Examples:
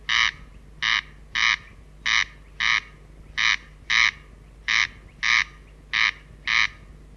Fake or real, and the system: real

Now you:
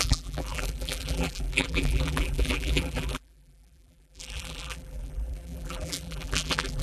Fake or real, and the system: fake, vocoder, BigVGAN v2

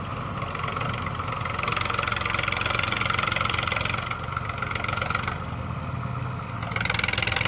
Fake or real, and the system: real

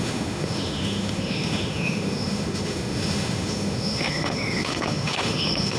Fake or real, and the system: fake, autoencoder, DAC-VAE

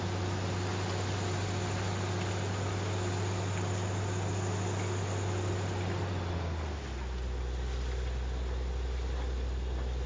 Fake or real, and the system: real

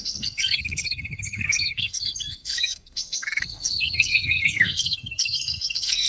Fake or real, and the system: fake, codec, SNAC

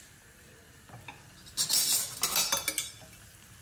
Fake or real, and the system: real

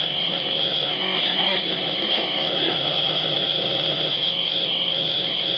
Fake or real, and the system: fake, codec, SNAC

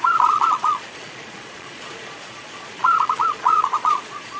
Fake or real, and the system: fake, vocoder, Vocos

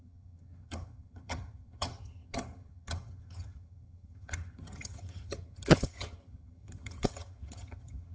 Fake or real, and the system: fake, vocoder, HiFi-GAN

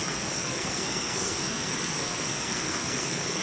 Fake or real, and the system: fake, codec, SNAC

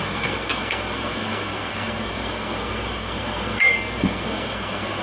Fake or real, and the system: fake, codec, SNAC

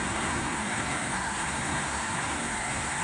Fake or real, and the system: fake, codec, SNAC